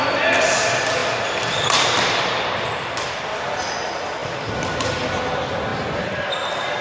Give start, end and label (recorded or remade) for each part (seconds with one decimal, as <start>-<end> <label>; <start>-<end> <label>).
0.0-1.0 recorded; 1.0-3.1 remade; 3.1-4.2 recorded; 4.2-5.1 remade; 5.1-5.7 recorded; 5.7-6.8 remade